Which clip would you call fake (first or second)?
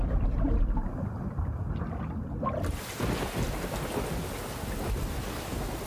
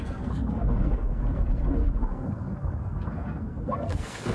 second